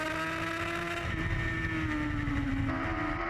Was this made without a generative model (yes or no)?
yes